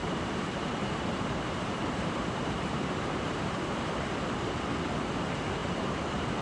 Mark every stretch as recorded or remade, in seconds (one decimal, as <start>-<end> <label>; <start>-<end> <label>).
0.0-3.8 remade; 3.8-5.6 recorded; 5.6-6.4 remade